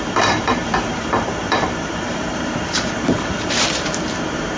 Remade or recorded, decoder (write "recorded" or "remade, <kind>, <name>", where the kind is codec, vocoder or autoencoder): remade, vocoder, BigVGAN v2